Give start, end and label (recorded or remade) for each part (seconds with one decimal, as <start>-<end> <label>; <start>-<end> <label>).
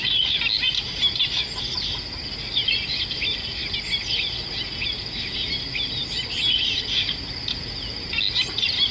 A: 0.0-8.9 recorded